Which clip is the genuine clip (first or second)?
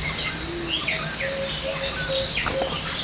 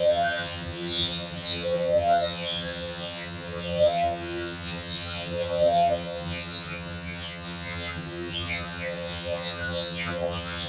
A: first